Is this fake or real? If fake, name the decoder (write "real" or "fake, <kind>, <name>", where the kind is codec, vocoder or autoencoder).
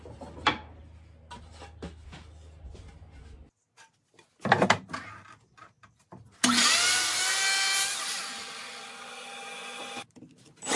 real